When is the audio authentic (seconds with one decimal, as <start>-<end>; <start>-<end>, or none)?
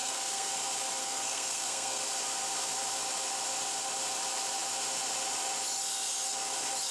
0.5-1.0; 2.0-6.9